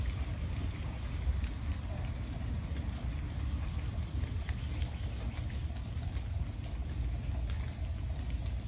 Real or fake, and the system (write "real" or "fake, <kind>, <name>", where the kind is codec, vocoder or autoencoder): real